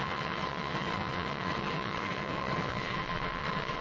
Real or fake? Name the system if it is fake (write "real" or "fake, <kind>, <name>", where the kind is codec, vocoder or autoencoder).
fake, vocoder, WaveNeXt